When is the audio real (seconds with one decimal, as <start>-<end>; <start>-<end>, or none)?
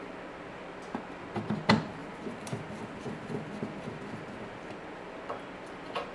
0.0-6.1